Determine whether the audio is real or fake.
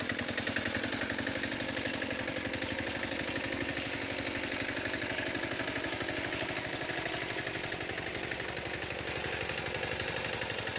real